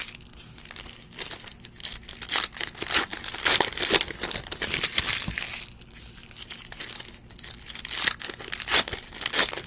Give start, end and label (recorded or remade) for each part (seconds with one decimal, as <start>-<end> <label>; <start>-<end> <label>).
0.0-9.7 recorded